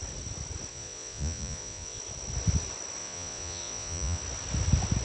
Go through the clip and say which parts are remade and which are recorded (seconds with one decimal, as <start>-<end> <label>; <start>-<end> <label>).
0.0-0.7 recorded; 0.7-2.0 remade; 2.0-3.0 recorded; 3.0-4.2 remade; 4.2-5.0 recorded